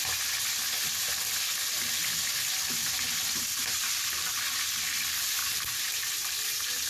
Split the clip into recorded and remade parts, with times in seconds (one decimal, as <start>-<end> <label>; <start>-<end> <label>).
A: 0.0-5.4 recorded; 5.4-6.9 remade